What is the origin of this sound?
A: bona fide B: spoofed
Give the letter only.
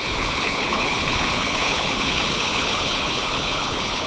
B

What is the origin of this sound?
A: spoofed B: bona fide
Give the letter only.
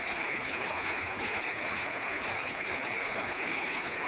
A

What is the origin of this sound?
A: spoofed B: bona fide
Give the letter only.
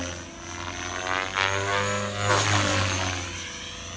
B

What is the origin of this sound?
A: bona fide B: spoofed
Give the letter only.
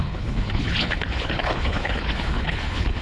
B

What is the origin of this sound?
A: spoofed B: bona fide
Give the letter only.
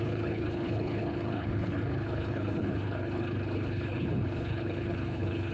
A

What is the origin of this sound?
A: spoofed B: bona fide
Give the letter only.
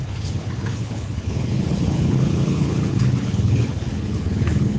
A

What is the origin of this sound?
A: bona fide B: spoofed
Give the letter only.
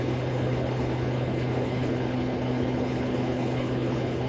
B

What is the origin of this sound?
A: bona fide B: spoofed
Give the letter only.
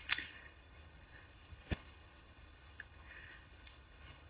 B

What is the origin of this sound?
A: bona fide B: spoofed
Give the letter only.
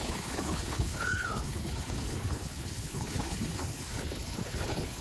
B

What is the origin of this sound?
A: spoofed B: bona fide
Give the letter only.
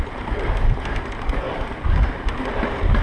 B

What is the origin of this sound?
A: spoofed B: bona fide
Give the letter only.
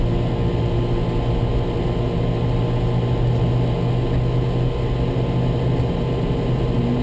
B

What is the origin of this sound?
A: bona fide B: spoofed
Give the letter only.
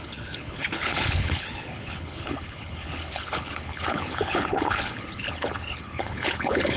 B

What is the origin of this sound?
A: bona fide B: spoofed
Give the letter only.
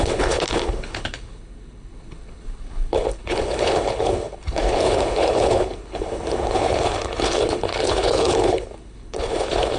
B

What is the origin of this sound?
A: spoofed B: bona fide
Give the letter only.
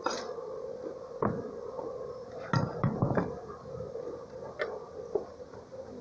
B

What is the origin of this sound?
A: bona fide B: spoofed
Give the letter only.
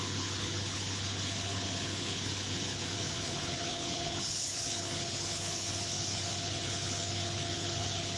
B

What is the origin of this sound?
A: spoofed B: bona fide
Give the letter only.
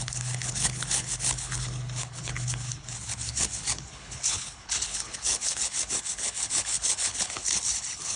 A